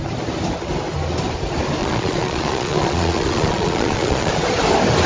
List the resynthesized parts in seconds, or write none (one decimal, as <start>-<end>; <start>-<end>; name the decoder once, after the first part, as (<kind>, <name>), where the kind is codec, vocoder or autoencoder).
1.8-4.3 (vocoder, Vocos)